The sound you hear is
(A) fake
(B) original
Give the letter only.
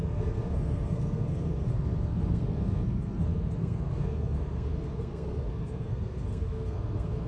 A